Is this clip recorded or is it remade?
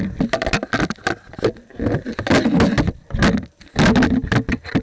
recorded